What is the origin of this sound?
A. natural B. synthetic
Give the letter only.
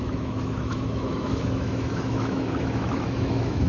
B